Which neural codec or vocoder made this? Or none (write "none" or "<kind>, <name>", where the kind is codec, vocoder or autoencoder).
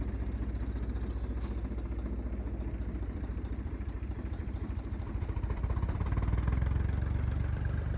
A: vocoder, BigVGAN v2